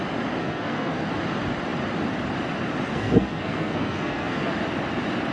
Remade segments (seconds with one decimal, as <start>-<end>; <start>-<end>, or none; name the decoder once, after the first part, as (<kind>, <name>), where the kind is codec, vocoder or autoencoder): 0.4-1.1 (codec, SNAC); 2.9-4.5